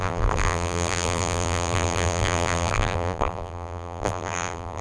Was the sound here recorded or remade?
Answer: remade